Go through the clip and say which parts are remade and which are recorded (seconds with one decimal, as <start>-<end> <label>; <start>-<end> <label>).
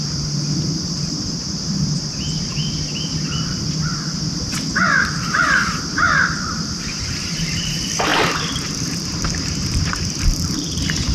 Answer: 0.0-2.6 remade; 2.6-4.7 recorded; 4.7-8.1 remade; 8.1-8.6 recorded; 8.6-11.1 remade